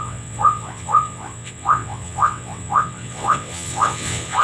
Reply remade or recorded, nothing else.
remade